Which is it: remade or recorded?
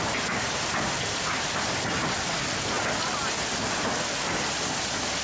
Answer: recorded